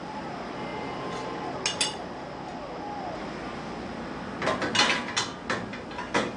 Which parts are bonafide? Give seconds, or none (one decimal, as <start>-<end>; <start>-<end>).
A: 0.0-6.4